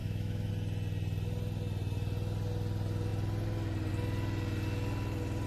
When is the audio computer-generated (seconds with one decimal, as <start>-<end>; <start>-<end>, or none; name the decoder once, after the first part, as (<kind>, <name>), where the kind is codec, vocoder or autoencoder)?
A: 0.0-0.5 (autoencoder, DAC-VAE)